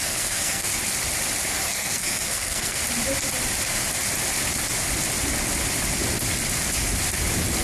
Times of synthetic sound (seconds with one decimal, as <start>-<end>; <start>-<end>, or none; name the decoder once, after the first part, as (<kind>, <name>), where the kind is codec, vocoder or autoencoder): 0.0-0.7 (codec, SNAC); 1.5-2.8